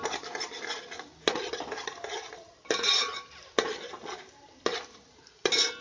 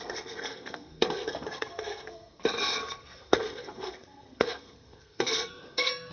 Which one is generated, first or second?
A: second